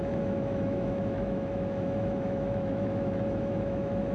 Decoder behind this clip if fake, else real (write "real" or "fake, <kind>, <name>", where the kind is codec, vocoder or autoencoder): fake, autoencoder, DAC-VAE